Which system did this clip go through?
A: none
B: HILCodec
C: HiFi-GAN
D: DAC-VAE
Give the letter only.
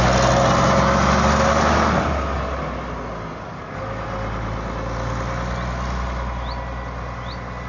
A